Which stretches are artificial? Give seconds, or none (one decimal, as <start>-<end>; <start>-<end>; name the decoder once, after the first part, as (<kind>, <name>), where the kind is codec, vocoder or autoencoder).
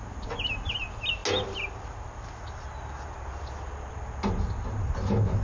none